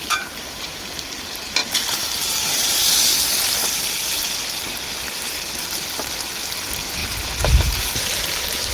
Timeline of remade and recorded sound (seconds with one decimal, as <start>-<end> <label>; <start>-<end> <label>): 0.0-8.7 remade